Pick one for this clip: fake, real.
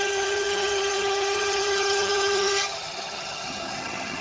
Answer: fake